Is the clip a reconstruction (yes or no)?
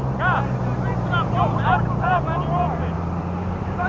no